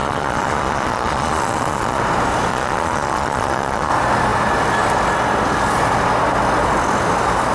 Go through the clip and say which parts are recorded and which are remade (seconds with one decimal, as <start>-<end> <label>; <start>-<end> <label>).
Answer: 0.0-2.0 remade; 2.0-2.5 recorded; 2.5-3.9 remade; 3.9-7.5 recorded

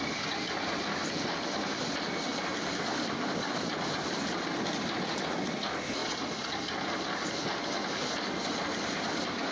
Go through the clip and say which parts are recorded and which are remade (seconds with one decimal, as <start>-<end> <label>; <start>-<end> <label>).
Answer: 0.0-9.5 recorded

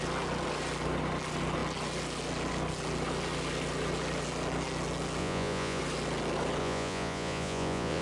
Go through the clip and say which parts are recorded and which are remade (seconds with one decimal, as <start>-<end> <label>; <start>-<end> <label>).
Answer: 0.0-5.2 recorded; 5.2-5.8 remade; 5.8-6.6 recorded; 6.6-8.0 remade

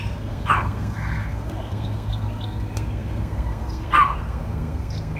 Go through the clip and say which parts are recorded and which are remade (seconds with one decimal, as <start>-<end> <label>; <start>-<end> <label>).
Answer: 0.0-5.2 remade

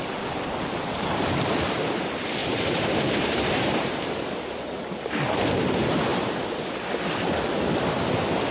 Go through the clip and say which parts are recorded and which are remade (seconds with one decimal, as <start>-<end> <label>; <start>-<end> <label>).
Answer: 0.0-2.4 recorded; 2.4-3.9 remade; 3.9-8.5 recorded

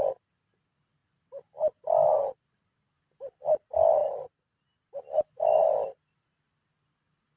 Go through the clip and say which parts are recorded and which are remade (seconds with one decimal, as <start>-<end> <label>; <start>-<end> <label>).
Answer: 0.0-7.4 recorded